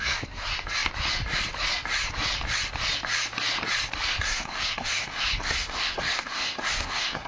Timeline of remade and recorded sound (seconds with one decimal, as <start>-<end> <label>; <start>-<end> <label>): 0.0-0.5 remade; 0.5-4.2 recorded; 4.2-7.3 remade